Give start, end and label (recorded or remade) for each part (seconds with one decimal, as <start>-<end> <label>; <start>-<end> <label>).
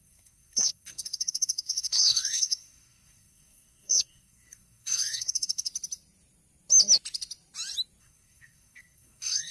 0.0-5.7 remade; 5.7-8.0 recorded; 8.0-9.5 remade